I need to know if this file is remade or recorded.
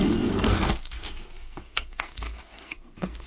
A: remade